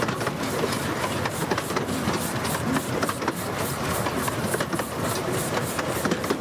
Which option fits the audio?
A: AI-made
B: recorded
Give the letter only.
B